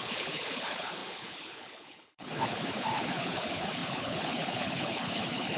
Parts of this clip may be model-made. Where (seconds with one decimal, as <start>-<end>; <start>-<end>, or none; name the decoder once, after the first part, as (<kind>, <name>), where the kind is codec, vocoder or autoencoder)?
0.0-5.6 (codec, HILCodec)